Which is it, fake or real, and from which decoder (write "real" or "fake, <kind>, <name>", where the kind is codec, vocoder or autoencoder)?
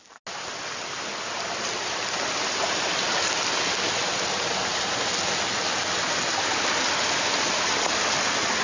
real